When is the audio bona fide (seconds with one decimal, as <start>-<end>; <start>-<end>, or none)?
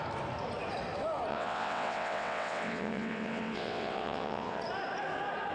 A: 0.0-1.3; 4.6-5.5